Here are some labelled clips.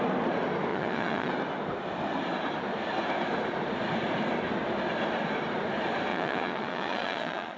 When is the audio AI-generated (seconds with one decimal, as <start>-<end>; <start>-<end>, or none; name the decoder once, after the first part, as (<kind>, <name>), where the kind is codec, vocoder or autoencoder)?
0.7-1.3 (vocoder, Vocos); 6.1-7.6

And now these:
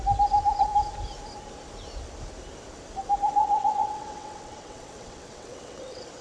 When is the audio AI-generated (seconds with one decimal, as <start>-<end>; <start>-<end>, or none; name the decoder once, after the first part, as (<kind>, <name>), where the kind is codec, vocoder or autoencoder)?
3.4-6.2 (vocoder, WaveNeXt)

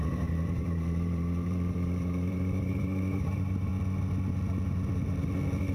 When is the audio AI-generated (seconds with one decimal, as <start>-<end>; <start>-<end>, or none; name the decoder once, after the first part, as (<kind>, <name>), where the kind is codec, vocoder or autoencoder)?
0.0-3.7 (vocoder, BigVGAN v2)

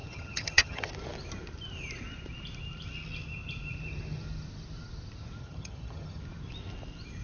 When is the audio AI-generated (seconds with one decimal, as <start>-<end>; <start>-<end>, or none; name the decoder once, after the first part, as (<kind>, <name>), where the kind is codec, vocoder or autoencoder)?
0.0-0.9 (vocoder, HiFi-GAN); 5.4-6.2

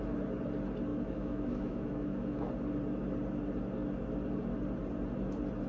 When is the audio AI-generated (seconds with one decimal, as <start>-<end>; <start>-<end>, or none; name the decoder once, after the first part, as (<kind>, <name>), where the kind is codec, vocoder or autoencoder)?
0.9-2.5 (autoencoder, DAC-VAE)

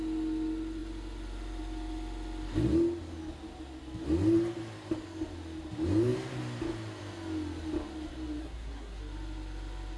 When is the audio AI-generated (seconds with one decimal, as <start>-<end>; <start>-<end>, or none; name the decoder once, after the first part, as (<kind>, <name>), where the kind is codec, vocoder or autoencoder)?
8.4-9.0 (codec, SNAC)